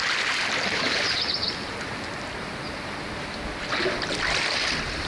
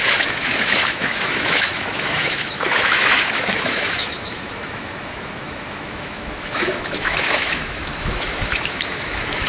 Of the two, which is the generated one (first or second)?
second